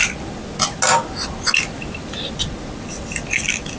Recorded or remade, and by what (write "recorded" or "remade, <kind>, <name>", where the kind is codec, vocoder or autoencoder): recorded